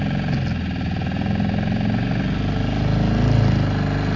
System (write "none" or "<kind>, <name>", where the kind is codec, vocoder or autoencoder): none